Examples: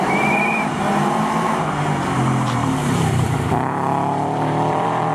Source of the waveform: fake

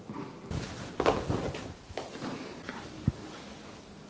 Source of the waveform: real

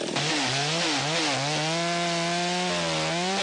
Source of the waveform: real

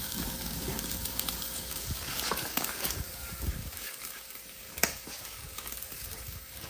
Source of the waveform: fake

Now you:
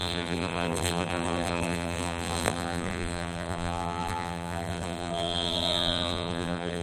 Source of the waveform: fake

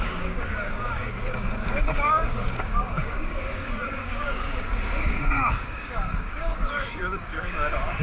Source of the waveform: fake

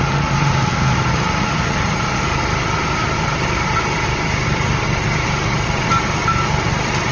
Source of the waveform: real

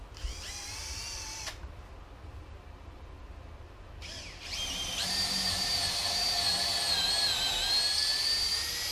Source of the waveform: real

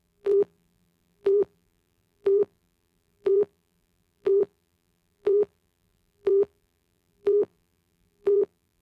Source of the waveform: fake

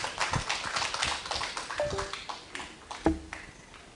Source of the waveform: real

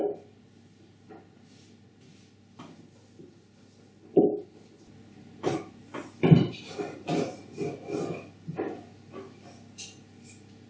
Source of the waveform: real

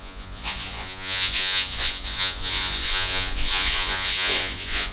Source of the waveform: fake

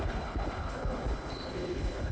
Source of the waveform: fake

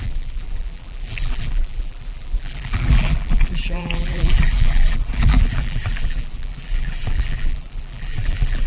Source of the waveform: fake